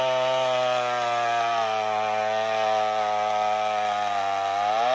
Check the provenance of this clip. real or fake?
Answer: real